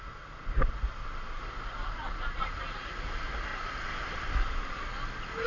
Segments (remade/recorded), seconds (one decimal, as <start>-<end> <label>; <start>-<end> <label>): 0.0-3.5 recorded; 3.5-4.8 remade; 4.8-5.5 recorded